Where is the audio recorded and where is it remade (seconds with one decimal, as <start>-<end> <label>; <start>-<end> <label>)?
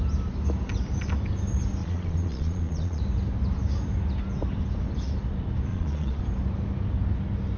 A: 0.0-1.8 recorded; 1.8-3.0 remade; 3.0-5.7 recorded; 5.7-6.2 remade; 6.2-7.6 recorded